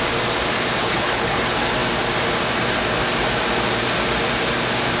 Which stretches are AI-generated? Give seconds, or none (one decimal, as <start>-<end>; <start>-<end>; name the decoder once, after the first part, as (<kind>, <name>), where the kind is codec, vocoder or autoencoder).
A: 0.8-1.4 (codec, HILCodec)